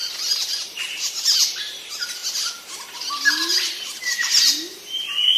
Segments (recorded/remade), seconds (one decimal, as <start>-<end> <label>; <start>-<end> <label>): 0.0-0.5 recorded; 0.5-2.2 remade; 2.2-5.4 recorded